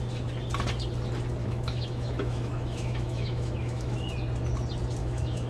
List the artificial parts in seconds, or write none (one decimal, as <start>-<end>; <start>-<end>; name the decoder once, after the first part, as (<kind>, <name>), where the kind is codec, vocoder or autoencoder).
1.4-4.1 (autoencoder, DAC-VAE); 5.0-5.5